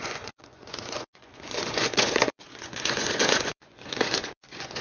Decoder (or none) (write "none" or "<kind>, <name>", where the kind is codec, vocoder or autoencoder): vocoder, Vocos